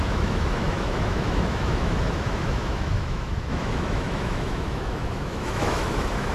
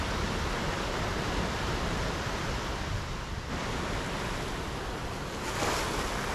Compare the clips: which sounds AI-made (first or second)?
first